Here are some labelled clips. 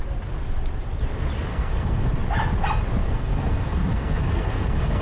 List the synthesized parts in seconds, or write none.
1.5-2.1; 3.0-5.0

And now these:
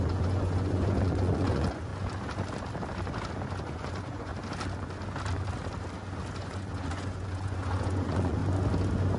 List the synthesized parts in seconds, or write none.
0.0-1.9; 3.6-4.3; 6.4-8.4

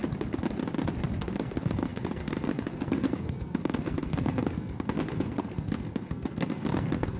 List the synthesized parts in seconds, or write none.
1.2-7.2

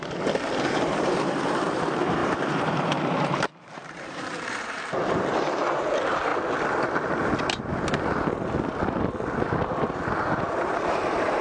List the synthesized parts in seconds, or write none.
0.0-6.3; 10.5-11.4